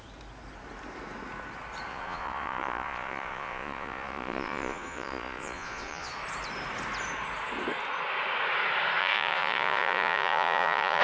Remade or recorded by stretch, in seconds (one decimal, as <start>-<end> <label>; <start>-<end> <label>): 0.0-1.9 recorded; 1.9-6.1 remade; 6.1-9.0 recorded; 9.0-11.0 remade